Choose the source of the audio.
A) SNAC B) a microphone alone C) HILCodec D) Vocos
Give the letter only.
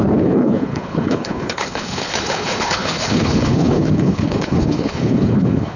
C